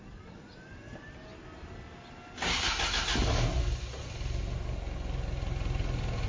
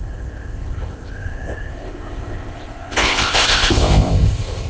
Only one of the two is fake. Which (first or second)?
second